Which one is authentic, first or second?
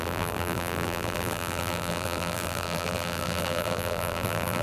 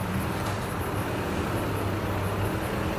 second